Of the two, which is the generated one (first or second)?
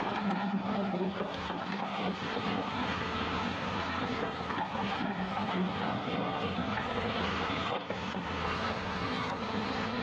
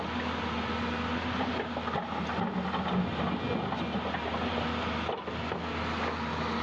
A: first